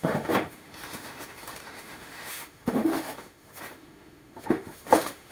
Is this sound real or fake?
fake